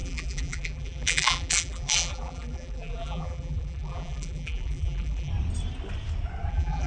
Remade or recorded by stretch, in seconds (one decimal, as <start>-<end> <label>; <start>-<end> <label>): 0.0-5.3 remade; 5.3-6.5 recorded; 6.5-6.9 remade

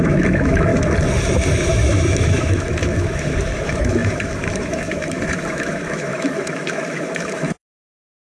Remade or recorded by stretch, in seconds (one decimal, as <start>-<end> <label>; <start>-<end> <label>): 0.0-0.7 remade; 0.7-1.6 recorded; 1.6-8.3 remade

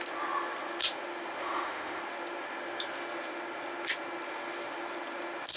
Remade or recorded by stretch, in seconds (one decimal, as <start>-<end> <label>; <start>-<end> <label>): 0.0-1.4 recorded; 1.4-2.0 remade; 2.0-5.6 recorded

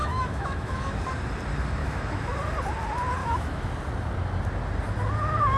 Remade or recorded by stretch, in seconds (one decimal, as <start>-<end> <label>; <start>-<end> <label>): 0.0-1.0 remade; 1.0-1.8 recorded; 1.8-2.4 remade; 2.4-3.2 recorded; 3.2-3.7 remade; 3.7-5.6 recorded